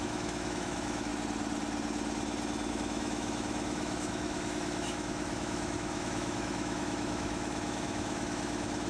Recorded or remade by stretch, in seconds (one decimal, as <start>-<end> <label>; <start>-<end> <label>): 0.0-1.1 remade; 1.1-2.7 recorded; 2.7-8.9 remade